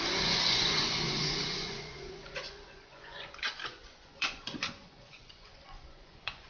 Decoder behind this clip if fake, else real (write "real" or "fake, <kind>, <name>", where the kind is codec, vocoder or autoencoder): fake, vocoder, Vocos